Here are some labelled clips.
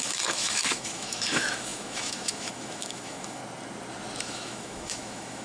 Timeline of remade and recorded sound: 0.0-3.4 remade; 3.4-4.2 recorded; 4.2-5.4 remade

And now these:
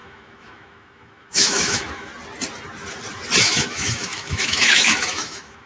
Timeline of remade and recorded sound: 0.0-2.1 remade; 2.1-3.4 recorded; 3.4-5.7 remade